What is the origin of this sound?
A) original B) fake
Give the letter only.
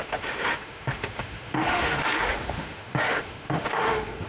B